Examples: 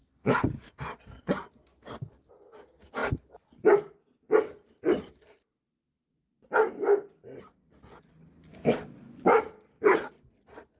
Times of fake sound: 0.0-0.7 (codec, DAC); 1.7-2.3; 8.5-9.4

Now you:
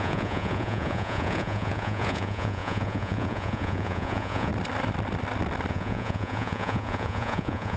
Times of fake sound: 0.0-4.5 (vocoder, Vocos); 5.7-7.8

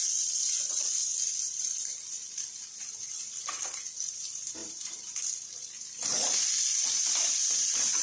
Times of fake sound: 0.0-8.0 (vocoder, BigVGAN v2)

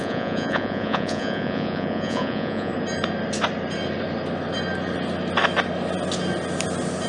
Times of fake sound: 0.0-2.7 (vocoder, Vocos)

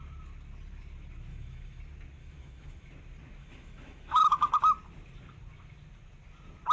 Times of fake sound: 1.3-1.8 (autoencoder, DAC-VAE); 2.2-2.9; 3.4-4.6

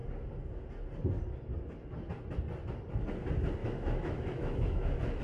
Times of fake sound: 3.6-5.2 (autoencoder, DAC-VAE)